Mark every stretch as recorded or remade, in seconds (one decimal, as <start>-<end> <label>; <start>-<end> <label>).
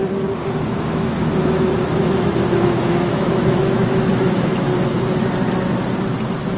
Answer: 0.0-0.6 recorded; 0.6-4.7 remade; 4.7-6.6 recorded